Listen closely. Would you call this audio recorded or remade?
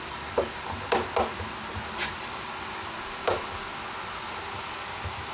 recorded